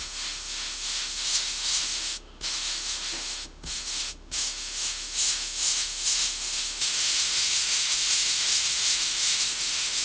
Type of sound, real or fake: fake